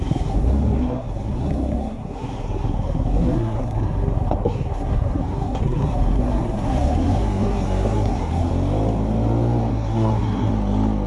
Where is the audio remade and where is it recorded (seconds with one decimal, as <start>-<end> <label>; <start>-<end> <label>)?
0.0-8.5 remade; 8.5-9.7 recorded; 9.7-10.5 remade; 10.5-11.1 recorded